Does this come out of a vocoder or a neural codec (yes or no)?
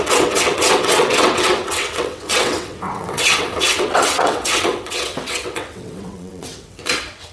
yes